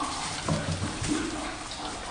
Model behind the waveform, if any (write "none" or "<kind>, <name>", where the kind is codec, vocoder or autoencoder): none